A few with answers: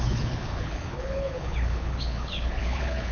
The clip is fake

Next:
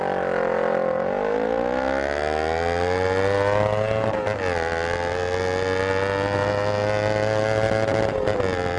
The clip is real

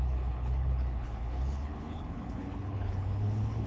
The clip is fake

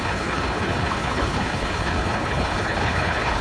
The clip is fake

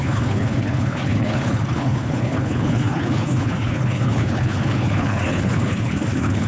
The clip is fake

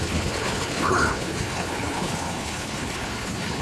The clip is fake